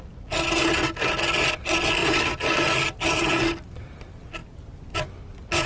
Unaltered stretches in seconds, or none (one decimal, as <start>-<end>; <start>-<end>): 0.0-2.0; 3.0-5.7